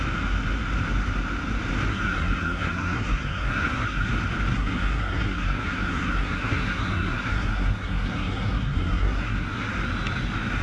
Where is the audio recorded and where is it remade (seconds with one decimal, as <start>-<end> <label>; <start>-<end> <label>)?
0.0-1.9 recorded; 1.9-4.1 remade; 4.1-4.5 recorded; 4.5-9.7 remade; 9.7-10.6 recorded